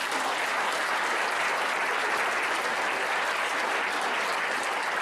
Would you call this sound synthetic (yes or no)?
no